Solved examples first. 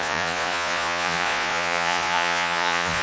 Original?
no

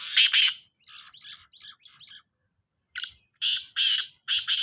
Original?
no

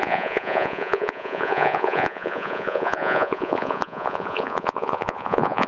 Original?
no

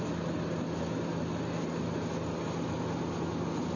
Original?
yes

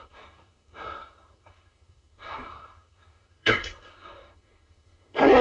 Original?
no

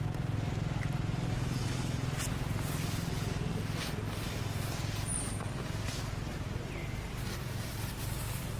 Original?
yes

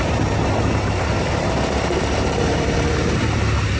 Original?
no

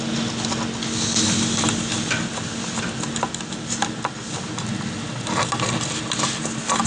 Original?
yes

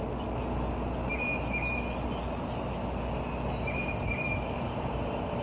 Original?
yes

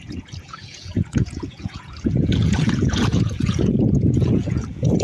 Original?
no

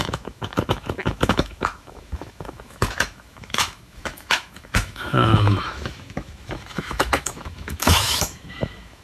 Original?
no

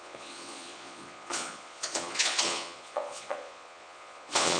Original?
no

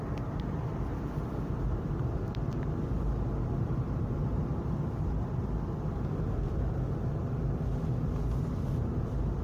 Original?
yes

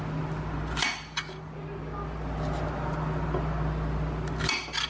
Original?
yes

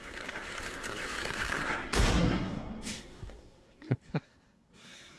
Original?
no